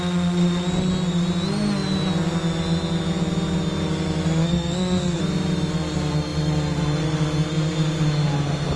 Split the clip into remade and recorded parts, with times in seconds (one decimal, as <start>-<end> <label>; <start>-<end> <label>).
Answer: 0.0-4.4 recorded; 4.4-5.2 remade; 5.2-8.8 recorded